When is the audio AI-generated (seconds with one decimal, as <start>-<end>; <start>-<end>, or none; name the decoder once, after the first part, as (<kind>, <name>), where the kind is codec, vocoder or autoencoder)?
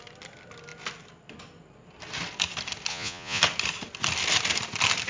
2.9-3.4 (vocoder, Vocos)